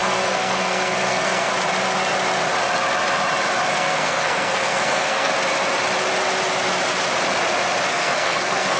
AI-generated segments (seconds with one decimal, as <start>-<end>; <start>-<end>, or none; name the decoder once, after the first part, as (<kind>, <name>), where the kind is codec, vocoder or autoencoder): 0.0-1.5 (codec, SNAC); 3.7-5.3; 7.9-8.8